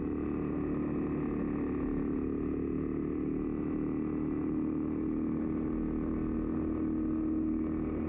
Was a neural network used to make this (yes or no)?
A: no